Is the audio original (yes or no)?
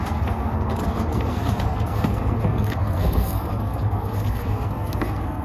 no